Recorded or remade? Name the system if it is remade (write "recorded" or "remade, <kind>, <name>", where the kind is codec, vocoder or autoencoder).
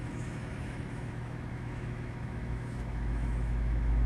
remade, autoencoder, DAC-VAE